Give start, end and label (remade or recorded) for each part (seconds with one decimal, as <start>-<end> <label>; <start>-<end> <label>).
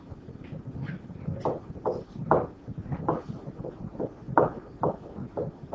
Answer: 0.0-5.7 recorded